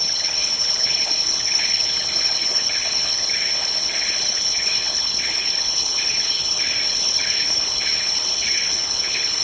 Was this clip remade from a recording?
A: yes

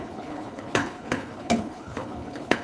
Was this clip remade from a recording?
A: yes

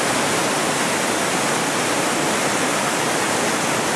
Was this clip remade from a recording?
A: no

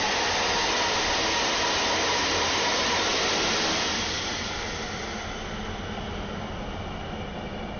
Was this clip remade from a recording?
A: no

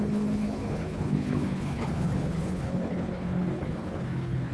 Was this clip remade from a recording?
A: yes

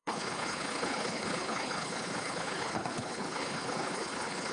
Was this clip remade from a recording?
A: yes